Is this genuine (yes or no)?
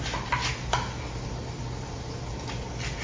yes